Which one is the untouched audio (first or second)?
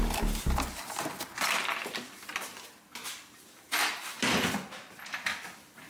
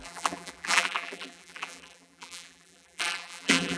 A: first